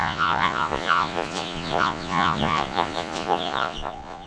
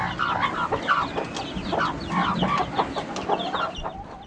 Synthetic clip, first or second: first